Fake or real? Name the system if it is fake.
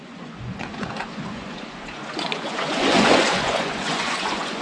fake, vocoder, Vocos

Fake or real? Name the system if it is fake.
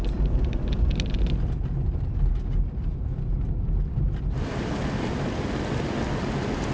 real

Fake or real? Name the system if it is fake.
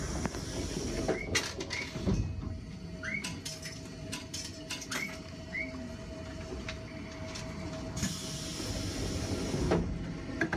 real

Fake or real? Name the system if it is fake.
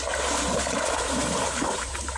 real